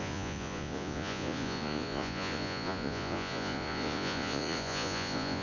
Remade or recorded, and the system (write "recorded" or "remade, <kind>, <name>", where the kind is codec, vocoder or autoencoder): remade, vocoder, Vocos